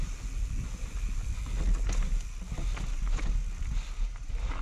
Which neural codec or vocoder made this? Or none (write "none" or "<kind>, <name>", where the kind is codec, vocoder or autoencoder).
none